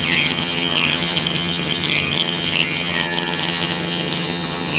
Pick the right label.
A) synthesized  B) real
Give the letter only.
A